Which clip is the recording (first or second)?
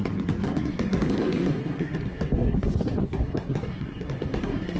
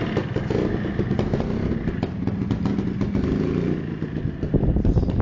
second